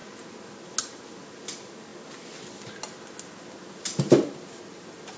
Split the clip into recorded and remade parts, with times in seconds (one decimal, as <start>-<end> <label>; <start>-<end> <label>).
0.0-5.2 recorded